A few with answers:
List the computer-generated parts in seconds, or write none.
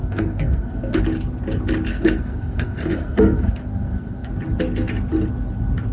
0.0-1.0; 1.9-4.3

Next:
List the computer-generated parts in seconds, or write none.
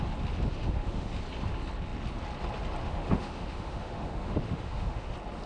0.5-1.1; 2.8-5.1